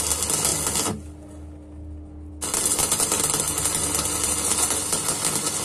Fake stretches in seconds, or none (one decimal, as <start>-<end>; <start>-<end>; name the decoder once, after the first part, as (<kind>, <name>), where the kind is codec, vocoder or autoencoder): none